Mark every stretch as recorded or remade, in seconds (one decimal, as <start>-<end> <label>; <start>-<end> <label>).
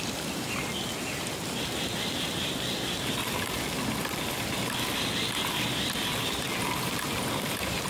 0.0-3.2 remade; 3.2-6.2 recorded; 6.2-7.9 remade